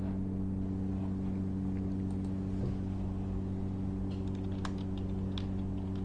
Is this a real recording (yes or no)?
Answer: yes